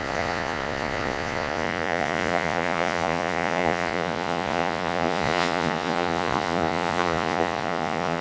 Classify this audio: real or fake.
fake